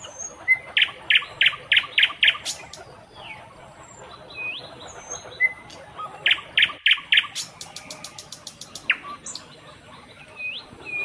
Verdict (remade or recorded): recorded